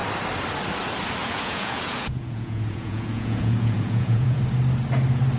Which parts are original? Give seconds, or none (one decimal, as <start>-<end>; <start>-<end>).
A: 0.0-1.2; 4.4-5.4